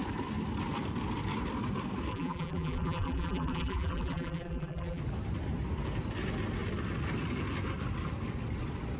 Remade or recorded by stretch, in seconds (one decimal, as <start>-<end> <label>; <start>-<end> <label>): 0.0-2.1 recorded; 2.1-5.0 remade; 5.0-9.0 recorded